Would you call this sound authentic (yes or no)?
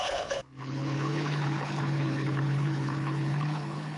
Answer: no